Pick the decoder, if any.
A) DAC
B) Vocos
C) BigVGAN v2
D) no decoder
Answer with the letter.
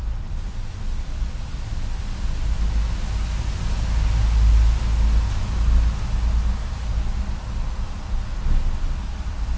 D